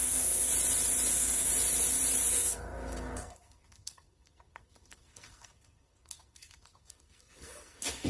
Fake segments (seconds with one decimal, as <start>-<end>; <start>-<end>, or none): 0.0-0.5; 1.1-1.5; 2.3-8.1